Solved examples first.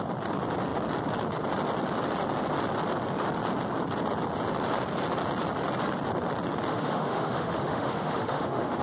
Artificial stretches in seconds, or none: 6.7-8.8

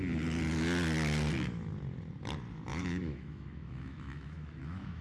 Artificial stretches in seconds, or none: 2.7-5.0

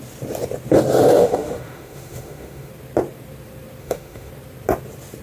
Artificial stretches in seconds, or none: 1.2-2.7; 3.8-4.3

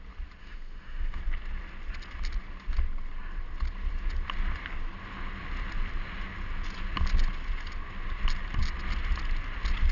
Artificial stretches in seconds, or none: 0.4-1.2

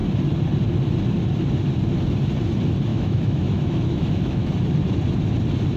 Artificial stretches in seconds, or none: 2.9-4.5

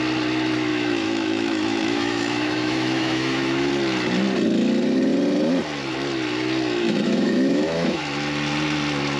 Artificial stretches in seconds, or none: 0.7-3.7; 6.8-8.0

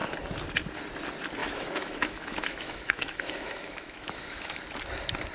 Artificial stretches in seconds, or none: 1.4-4.6

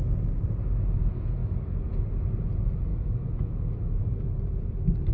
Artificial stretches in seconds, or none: 1.4-2.0; 2.9-4.3